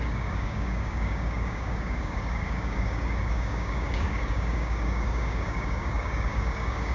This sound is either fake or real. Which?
fake